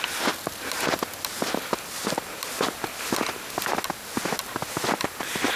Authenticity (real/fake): real